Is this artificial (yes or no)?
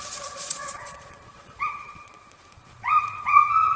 yes